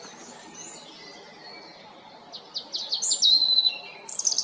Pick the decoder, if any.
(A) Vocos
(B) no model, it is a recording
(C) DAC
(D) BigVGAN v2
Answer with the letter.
B